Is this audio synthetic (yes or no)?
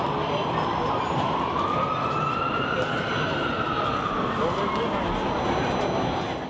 no